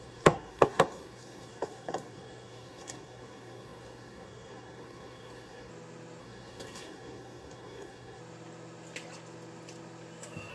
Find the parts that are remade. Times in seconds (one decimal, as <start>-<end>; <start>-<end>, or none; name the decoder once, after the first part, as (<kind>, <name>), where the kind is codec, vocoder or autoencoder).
0.0-5.7 (codec, SNAC); 6.2-8.2